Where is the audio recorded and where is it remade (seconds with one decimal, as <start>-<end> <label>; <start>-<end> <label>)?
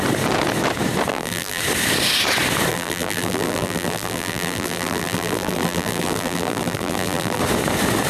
0.0-1.1 recorded; 1.1-1.6 remade; 1.6-2.7 recorded; 2.7-7.4 remade; 7.4-8.1 recorded